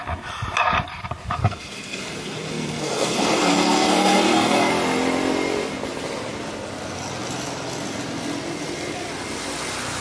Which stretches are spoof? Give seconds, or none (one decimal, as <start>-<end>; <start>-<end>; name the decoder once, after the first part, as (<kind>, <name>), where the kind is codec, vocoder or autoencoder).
1.4-4.7 (codec, SNAC)